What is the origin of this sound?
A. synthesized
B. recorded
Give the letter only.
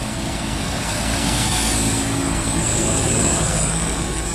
A